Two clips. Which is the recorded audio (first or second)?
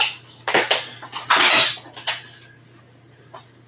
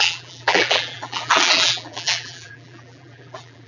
first